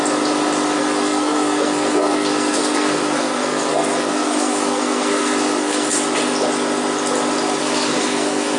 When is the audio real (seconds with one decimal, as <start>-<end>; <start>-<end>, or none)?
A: 0.0-0.8; 5.9-7.6